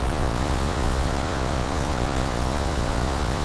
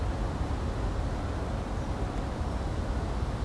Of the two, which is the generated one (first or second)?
first